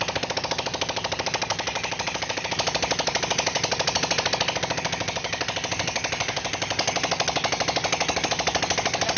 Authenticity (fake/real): real